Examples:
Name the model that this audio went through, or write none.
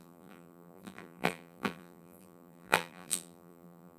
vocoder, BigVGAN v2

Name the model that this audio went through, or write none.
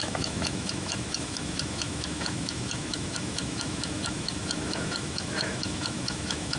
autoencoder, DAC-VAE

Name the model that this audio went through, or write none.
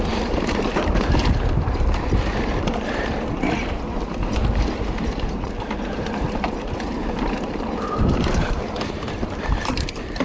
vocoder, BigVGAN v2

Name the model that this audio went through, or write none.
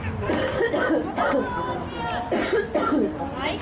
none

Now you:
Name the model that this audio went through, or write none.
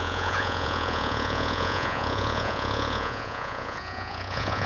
vocoder, Vocos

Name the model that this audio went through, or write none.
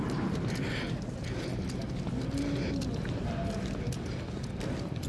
none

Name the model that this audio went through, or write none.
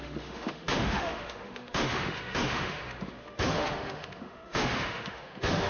autoencoder, DAC-VAE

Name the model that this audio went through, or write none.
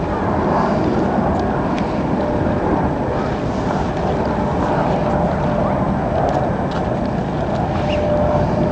none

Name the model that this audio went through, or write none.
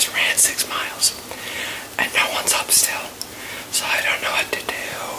none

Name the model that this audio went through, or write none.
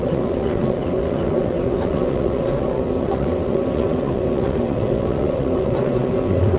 vocoder, WaveNeXt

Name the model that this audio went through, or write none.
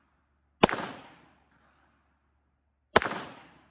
none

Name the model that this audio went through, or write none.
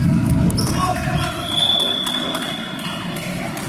none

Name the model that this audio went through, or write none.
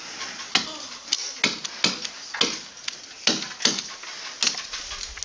none